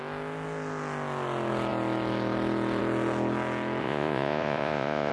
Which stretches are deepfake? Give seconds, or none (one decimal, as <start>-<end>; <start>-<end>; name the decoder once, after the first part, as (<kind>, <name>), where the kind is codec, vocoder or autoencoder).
3.8-5.1 (vocoder, Vocos)